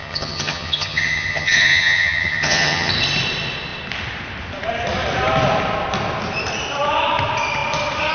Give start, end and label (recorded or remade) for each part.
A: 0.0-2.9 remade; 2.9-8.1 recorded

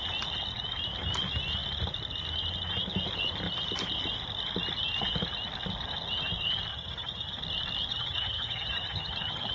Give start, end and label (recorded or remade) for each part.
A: 0.0-6.7 recorded; 6.7-7.4 remade; 7.4-7.9 recorded; 7.9-9.5 remade

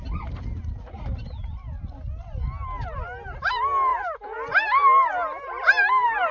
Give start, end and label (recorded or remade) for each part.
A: 0.0-6.3 recorded

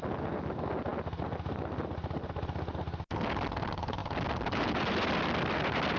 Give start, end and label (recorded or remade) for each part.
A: 0.0-6.0 recorded

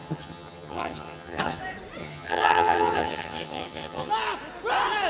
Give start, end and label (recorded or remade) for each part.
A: 0.0-1.6 remade; 1.6-2.0 recorded; 2.0-4.1 remade; 4.1-5.1 recorded

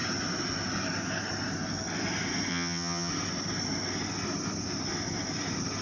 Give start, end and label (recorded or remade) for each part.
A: 0.0-2.5 recorded; 2.5-3.1 remade; 3.1-5.8 recorded

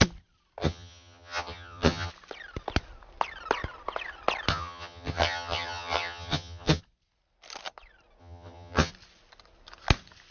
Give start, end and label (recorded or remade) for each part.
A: 0.0-0.6 recorded; 0.6-2.1 remade; 2.1-4.5 recorded; 4.5-6.8 remade; 6.8-8.2 recorded; 8.2-8.9 remade; 8.9-10.3 recorded